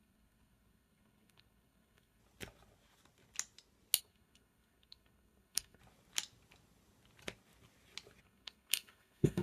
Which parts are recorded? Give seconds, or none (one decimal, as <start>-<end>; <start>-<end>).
2.2-4.0; 5.8-8.2